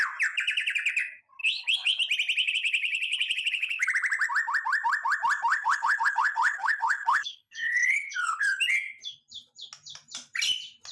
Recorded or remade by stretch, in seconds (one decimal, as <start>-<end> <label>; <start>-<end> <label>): 0.0-1.4 recorded; 1.4-2.0 remade; 2.0-2.4 recorded; 2.4-3.9 remade; 3.9-5.5 recorded; 5.5-8.6 remade; 8.6-10.9 recorded